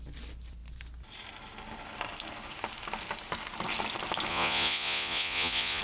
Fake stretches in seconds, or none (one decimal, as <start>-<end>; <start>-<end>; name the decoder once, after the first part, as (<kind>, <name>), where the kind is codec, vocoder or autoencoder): 4.3-5.8 (vocoder, Vocos)